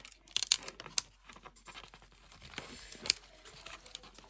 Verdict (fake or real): real